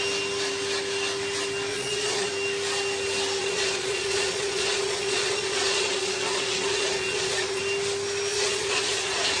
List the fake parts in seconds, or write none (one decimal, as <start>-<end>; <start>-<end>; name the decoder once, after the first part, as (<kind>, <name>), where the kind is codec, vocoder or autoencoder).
1.7-2.3 (vocoder, Vocos); 3.4-7.6; 8.3-9.4

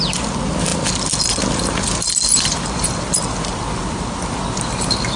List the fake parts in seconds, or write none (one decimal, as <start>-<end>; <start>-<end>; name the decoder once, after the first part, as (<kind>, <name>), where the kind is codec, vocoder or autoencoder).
none

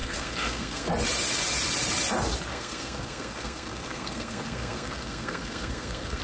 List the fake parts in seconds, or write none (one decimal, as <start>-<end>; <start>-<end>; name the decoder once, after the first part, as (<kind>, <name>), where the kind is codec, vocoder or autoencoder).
0.0-0.9 (codec, SNAC); 2.5-6.2

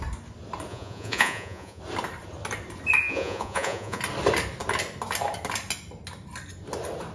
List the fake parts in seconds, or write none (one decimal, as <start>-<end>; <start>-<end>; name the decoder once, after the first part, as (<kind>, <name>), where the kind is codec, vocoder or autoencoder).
0.7-1.8 (vocoder, Vocos); 3.0-4.0

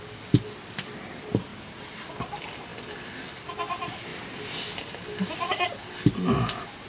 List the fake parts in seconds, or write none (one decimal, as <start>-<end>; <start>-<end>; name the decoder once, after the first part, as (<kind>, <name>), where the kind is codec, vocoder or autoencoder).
none

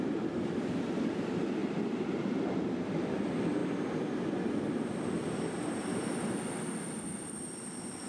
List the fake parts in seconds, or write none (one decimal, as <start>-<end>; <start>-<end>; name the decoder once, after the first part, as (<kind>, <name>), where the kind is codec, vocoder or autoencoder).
0.0-3.6 (vocoder, BigVGAN v2); 4.8-8.1

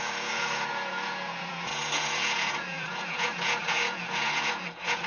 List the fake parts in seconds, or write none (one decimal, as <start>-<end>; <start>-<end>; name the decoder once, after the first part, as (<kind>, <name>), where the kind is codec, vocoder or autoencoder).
0.0-5.1 (vocoder, Vocos)